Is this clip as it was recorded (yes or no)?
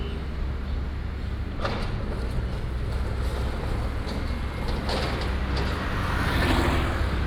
yes